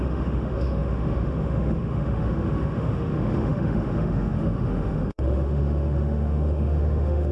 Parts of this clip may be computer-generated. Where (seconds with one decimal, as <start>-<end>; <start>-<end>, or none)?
0.0-7.3